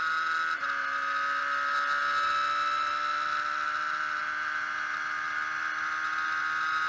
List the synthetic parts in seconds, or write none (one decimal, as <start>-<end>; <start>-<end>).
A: none